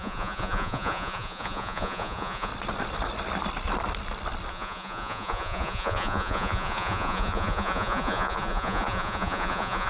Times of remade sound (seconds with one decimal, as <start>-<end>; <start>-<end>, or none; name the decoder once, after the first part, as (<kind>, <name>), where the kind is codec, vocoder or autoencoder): 0.0-2.5 (vocoder, Vocos); 4.5-9.9